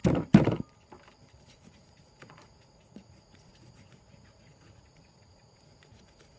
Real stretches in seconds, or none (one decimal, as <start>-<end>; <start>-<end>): 0.0-1.4

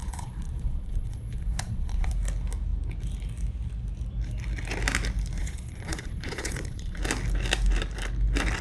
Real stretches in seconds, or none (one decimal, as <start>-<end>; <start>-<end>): 2.1-5.4; 7.0-8.6

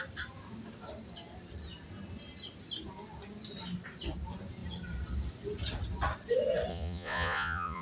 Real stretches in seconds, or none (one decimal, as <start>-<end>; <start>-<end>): 0.0-6.7

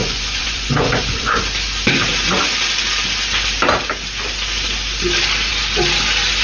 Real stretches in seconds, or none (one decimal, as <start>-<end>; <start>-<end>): 1.4-6.4

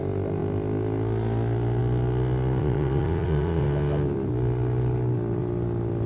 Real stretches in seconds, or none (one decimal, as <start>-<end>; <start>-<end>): 0.0-2.6; 3.6-6.1

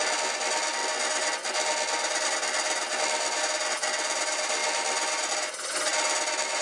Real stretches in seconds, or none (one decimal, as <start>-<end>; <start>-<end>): 0.0-6.6

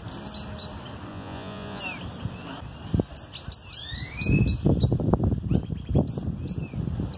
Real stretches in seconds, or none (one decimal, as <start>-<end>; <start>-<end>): 0.0-1.1; 1.8-7.2